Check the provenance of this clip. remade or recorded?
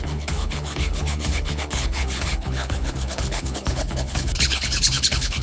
remade